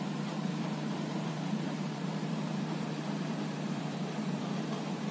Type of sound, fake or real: fake